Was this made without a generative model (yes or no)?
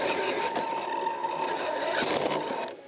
yes